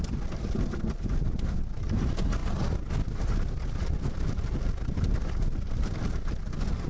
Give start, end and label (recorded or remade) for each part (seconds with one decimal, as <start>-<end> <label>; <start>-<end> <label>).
0.0-6.9 recorded